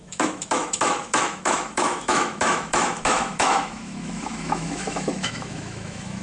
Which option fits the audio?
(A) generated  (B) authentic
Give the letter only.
A